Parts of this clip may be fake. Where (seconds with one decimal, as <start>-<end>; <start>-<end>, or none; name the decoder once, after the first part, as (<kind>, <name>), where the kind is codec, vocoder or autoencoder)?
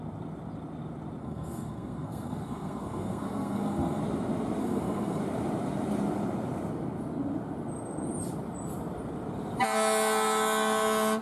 1.2-4.0 (codec, SNAC); 4.6-5.2